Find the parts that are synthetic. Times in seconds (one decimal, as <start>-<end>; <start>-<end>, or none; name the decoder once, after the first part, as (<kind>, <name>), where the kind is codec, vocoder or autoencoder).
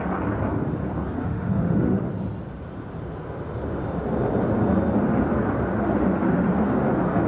1.2-2.1 (autoencoder, DAC-VAE)